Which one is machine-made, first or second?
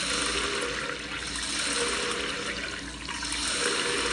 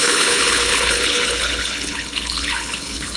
second